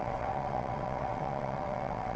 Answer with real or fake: fake